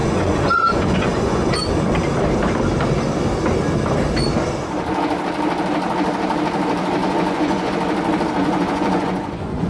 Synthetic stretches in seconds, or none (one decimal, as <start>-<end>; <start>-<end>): 0.0-1.5; 7.0-7.7; 8.4-9.7